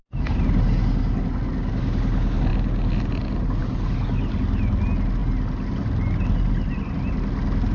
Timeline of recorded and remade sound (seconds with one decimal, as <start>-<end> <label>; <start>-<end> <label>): 0.0-7.7 recorded